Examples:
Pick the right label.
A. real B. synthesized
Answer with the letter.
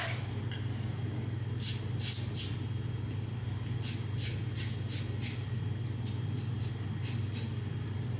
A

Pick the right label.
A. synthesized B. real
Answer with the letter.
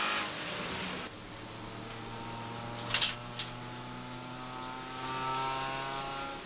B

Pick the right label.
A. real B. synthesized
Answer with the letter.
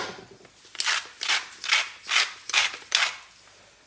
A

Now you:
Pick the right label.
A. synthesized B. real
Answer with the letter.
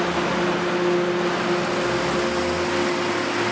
B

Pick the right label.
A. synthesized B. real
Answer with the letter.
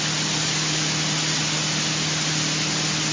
B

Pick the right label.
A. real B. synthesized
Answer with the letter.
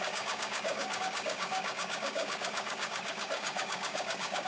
B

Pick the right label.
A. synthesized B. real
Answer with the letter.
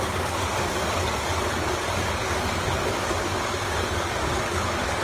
A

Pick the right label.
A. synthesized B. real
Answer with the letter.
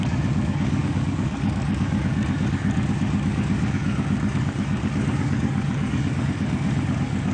A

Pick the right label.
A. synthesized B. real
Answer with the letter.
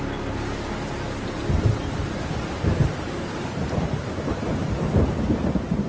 B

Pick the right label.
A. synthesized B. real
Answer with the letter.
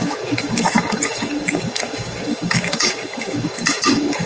A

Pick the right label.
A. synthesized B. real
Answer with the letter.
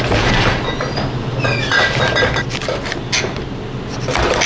B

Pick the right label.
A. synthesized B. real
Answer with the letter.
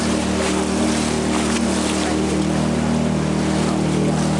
B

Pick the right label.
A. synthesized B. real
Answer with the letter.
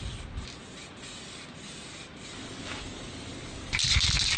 B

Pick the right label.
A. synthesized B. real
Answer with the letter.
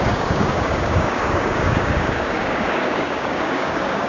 A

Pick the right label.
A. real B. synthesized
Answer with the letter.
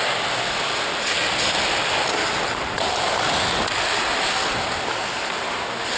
A